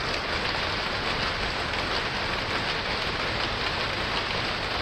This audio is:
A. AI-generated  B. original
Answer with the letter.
B